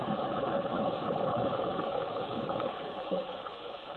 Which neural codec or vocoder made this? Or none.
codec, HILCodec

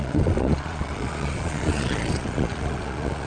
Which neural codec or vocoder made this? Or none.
vocoder, Vocos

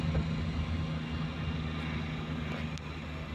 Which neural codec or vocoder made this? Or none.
none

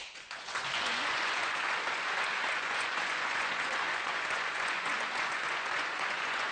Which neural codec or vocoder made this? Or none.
vocoder, Vocos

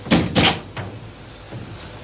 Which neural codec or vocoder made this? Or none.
none